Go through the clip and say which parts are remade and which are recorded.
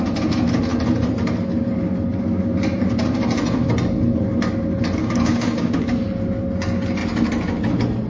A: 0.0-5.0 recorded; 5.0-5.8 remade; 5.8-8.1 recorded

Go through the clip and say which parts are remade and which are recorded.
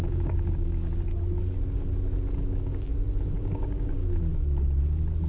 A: 0.0-0.8 remade; 0.8-2.4 recorded; 2.4-2.9 remade; 2.9-3.4 recorded; 3.4-4.0 remade; 4.0-5.3 recorded